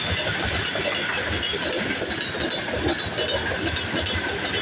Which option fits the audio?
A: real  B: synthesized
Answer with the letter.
A